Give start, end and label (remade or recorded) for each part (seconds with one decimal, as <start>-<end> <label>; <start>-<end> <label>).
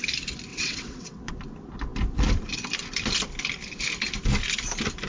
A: 0.0-0.5 recorded; 0.5-1.3 remade; 1.3-5.1 recorded